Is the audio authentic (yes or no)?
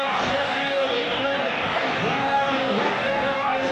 no